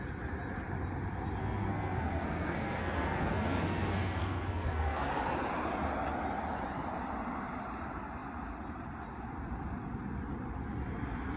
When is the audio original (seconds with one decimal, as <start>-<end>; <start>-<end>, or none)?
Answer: 0.0-1.4; 5.1-11.4